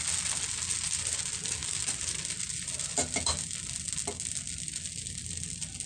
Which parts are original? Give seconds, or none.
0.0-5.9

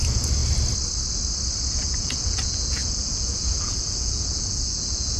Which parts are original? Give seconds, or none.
0.4-1.7